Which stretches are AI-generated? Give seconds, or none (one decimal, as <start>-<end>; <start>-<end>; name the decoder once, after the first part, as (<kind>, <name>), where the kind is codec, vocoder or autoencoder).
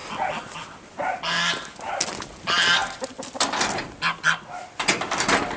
none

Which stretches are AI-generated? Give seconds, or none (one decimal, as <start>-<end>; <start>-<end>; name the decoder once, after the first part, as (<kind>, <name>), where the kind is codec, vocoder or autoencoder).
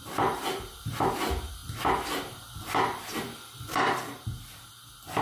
none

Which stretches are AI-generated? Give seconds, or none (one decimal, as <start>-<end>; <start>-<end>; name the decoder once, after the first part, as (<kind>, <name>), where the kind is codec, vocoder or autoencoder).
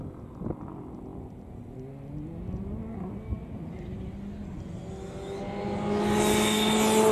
none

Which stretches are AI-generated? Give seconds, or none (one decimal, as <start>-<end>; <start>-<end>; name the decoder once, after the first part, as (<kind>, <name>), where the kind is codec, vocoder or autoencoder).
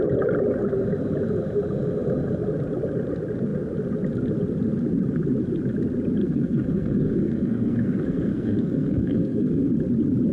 6.2-9.7 (codec, SNAC)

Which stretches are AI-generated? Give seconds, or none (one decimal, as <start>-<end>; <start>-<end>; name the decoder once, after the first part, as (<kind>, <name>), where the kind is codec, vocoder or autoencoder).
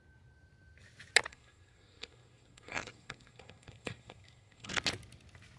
1.3-4.7 (codec, SNAC)